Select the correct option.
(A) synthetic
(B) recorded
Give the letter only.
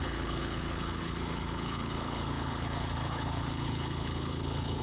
A